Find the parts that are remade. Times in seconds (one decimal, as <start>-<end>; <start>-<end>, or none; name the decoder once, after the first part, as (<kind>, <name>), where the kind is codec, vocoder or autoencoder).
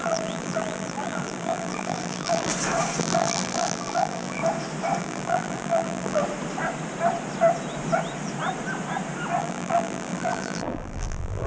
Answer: 0.0-2.5 (vocoder, BigVGAN v2); 3.0-4.4; 5.0-6.2; 9.4-11.5